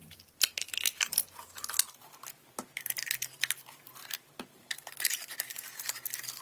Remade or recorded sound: recorded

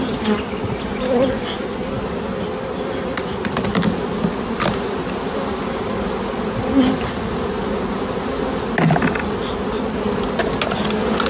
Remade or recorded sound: recorded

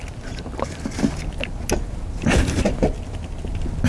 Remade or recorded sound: recorded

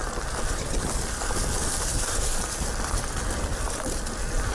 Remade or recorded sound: recorded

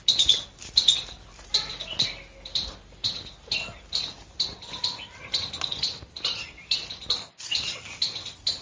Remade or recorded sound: recorded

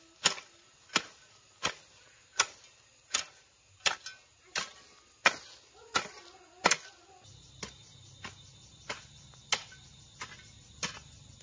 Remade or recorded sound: recorded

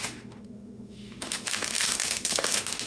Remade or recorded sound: remade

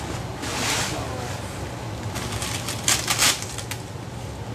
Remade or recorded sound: recorded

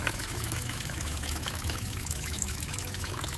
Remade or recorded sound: remade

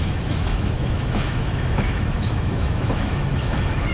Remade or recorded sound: remade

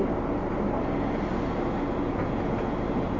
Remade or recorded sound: recorded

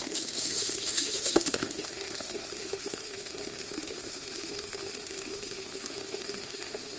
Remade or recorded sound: remade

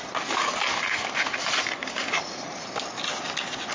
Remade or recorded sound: recorded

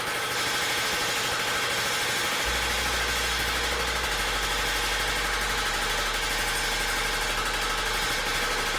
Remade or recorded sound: recorded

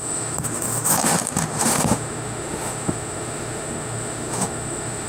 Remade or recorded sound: remade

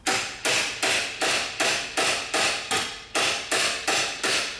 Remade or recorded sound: recorded